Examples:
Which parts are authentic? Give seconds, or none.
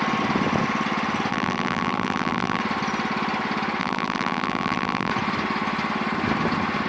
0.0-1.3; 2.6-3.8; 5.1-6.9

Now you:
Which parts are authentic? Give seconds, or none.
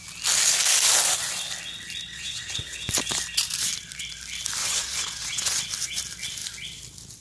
0.0-2.1; 2.9-4.6; 5.6-7.2